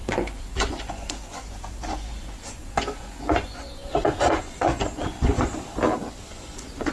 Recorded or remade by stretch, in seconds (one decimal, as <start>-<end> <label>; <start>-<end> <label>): 0.0-5.5 remade; 5.5-6.3 recorded; 6.3-6.9 remade